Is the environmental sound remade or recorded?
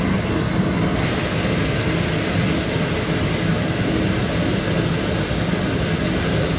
recorded